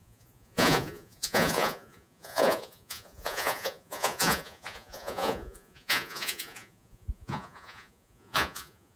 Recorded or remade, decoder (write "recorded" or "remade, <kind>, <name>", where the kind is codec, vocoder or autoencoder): remade, vocoder, Vocos